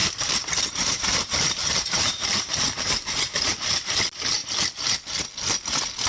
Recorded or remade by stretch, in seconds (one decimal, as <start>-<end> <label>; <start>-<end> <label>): 0.0-3.7 remade; 3.7-6.1 recorded